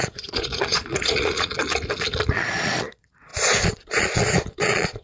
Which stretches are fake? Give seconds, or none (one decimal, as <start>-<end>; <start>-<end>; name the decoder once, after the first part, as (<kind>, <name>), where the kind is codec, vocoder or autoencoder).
0.0-1.6 (vocoder, Vocos); 2.3-5.0